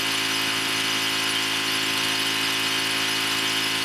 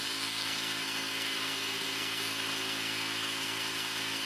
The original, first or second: first